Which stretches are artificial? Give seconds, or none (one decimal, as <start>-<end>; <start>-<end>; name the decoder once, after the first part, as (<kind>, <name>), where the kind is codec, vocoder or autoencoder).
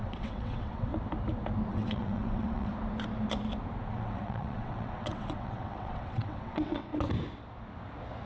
0.0-0.9 (vocoder, WaveNeXt); 1.7-2.7; 3.9-6.9